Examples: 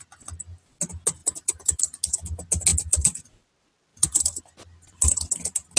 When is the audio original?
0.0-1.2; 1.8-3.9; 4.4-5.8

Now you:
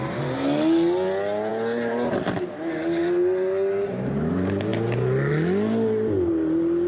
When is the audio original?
0.0-6.9

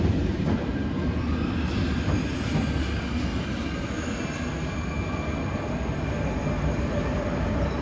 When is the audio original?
0.0-3.3; 4.2-7.8

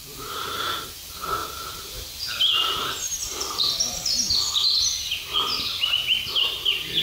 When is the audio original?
0.7-1.4; 5.1-7.0

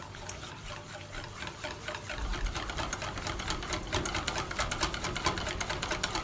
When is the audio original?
0.0-6.2